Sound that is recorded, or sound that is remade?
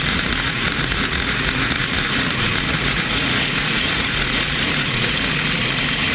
remade